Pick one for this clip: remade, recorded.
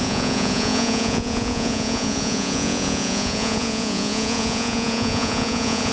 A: remade